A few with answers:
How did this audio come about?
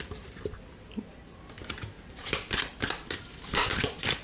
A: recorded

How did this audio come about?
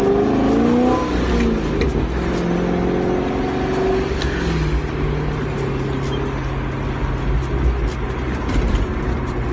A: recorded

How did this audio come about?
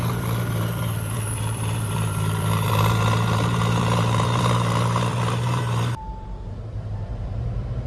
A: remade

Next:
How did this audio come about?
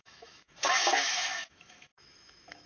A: remade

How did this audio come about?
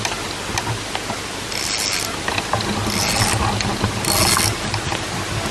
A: recorded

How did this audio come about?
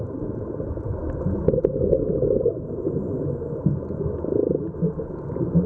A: recorded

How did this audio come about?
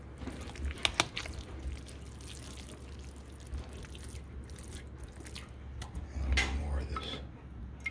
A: recorded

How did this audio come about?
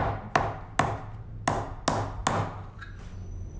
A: recorded